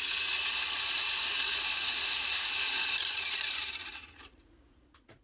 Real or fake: fake